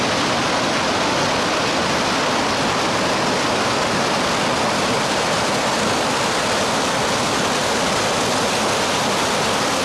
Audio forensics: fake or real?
real